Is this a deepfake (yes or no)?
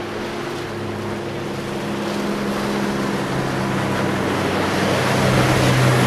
no